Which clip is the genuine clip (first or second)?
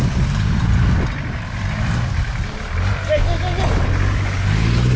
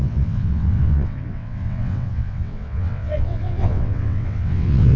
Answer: first